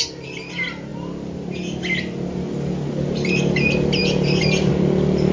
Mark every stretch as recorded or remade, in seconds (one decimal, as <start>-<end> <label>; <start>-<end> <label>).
0.0-4.0 recorded; 4.0-4.7 remade; 4.7-5.3 recorded